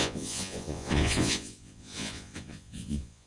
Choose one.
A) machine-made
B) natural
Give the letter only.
A